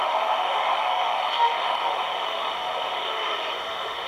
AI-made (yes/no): yes